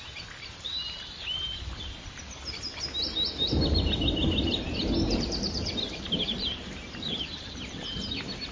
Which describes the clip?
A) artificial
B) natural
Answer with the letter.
B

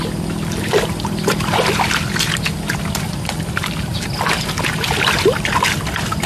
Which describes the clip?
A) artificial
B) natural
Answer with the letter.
B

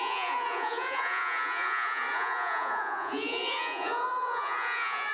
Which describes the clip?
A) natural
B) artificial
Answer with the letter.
B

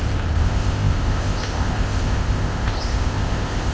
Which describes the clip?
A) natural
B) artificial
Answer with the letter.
B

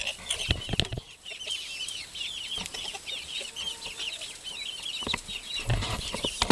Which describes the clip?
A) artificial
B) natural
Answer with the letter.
B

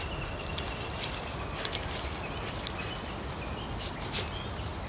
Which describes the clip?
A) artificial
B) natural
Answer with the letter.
B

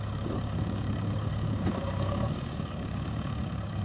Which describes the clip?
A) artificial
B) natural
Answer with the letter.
A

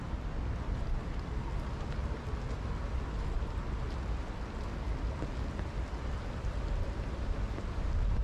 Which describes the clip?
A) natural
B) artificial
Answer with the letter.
A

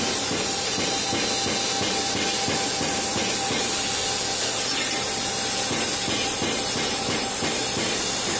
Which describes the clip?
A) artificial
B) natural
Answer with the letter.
B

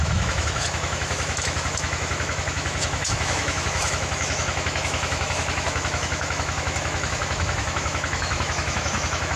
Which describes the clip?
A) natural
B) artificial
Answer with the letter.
B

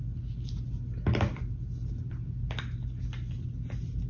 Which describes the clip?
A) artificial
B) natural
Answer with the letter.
B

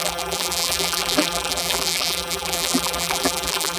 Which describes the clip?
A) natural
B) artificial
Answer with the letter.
B